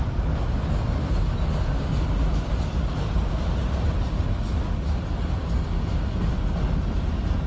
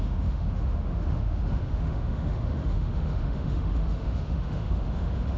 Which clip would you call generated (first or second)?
second